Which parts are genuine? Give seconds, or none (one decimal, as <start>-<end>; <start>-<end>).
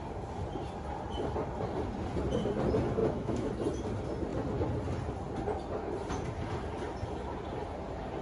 0.0-3.0; 3.5-8.2